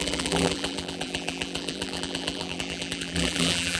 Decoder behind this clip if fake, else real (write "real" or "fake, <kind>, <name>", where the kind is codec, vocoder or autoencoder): fake, vocoder, BigVGAN v2